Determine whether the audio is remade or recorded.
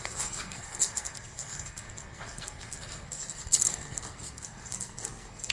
remade